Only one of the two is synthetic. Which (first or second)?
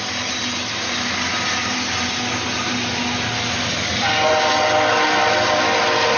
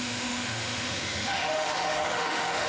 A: second